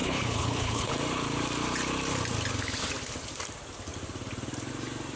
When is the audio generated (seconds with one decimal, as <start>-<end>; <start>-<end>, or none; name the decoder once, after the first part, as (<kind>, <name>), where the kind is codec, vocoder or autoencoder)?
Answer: 0.0-0.9 (codec, HILCodec)